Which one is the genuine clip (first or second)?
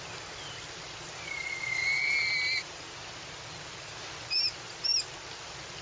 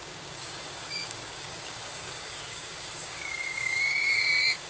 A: first